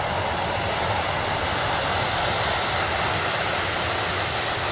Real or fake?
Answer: real